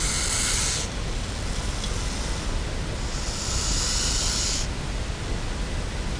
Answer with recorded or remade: recorded